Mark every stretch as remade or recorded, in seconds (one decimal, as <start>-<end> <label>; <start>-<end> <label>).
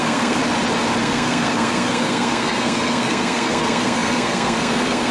0.0-0.4 remade; 0.4-1.0 recorded; 1.0-5.1 remade